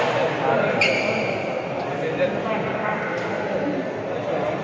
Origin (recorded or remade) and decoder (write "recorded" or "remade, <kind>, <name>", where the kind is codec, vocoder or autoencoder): recorded